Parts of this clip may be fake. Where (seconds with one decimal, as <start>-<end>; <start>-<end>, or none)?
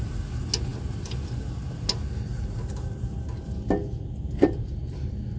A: none